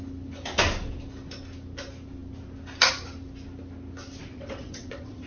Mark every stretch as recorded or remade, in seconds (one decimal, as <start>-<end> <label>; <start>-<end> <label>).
0.0-4.2 recorded; 4.2-5.3 remade